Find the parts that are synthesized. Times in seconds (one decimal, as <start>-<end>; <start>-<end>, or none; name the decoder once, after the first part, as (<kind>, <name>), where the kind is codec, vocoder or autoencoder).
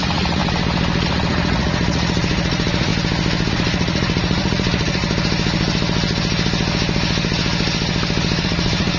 0.0-0.4 (vocoder, Vocos); 1.1-2.9; 3.5-5.0; 8.4-9.0